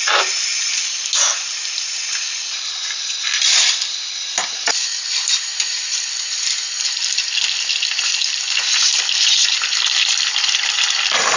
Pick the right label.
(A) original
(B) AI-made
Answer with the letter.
A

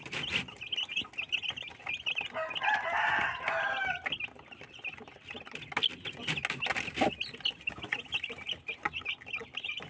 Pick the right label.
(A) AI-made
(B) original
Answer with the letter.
B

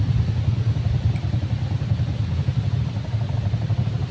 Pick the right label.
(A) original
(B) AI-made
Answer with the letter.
A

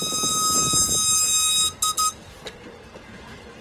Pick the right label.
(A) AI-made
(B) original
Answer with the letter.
B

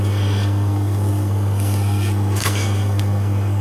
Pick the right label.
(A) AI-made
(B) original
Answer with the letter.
A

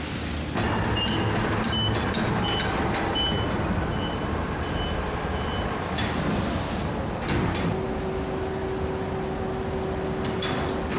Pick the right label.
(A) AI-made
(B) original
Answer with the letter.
B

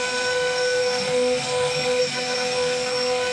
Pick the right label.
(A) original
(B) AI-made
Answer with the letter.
B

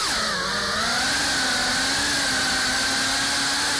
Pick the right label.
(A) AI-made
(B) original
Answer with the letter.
B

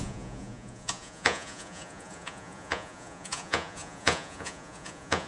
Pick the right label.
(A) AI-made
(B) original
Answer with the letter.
A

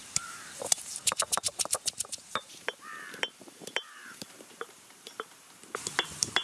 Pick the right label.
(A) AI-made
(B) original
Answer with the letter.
A